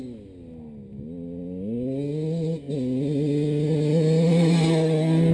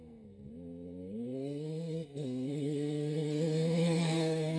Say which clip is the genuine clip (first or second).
first